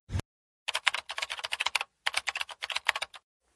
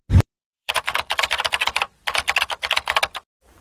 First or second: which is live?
first